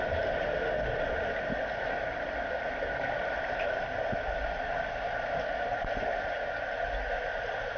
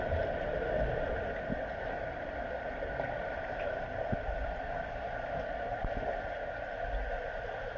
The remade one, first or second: second